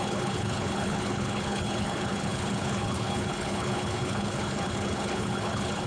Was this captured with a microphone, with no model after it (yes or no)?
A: no